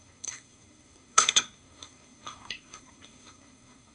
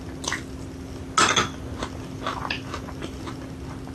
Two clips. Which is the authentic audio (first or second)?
second